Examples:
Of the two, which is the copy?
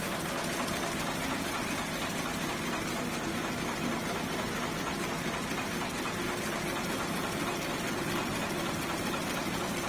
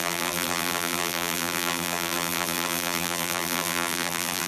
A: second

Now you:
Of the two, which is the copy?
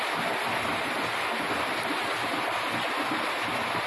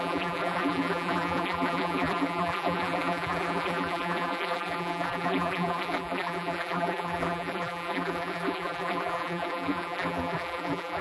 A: second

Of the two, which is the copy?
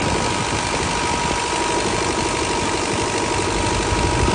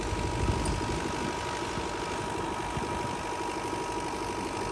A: first